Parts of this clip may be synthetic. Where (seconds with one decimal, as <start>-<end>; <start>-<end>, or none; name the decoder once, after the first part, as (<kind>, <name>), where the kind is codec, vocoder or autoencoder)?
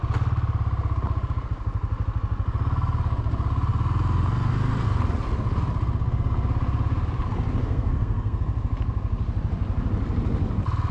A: 7.6-8.4 (codec, SNAC)